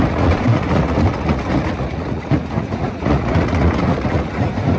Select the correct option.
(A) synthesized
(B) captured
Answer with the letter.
A